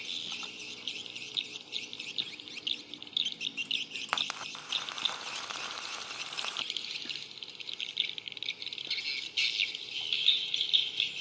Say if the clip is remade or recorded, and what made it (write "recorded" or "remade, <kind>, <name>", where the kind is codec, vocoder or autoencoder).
recorded